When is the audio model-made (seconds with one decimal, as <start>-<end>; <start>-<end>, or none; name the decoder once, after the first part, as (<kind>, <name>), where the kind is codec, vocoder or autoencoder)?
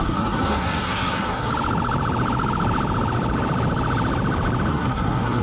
0.0-1.5 (codec, SNAC); 4.7-5.4